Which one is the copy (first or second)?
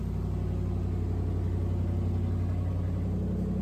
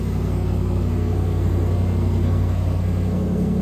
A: second